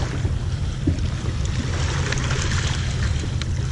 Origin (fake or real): real